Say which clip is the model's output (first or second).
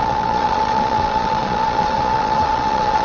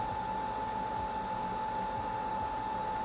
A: first